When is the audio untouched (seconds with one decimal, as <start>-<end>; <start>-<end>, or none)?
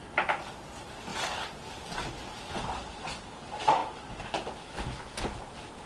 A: 0.0-5.9